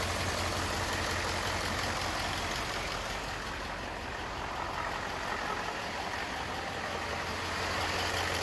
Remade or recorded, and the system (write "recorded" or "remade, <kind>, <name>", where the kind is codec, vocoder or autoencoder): recorded